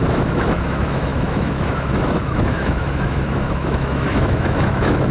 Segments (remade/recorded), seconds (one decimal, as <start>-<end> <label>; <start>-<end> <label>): 0.0-5.1 remade